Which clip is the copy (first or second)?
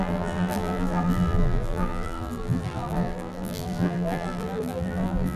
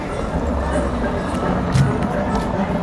first